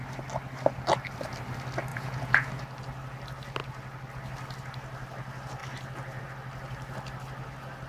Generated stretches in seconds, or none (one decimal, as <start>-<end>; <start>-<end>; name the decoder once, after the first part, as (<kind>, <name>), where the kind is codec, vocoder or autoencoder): 1.9-2.5 (vocoder, Vocos)